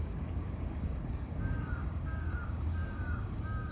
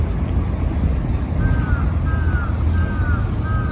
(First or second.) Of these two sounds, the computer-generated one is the first